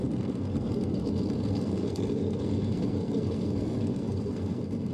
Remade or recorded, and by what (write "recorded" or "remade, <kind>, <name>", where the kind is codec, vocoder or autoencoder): remade, codec, SNAC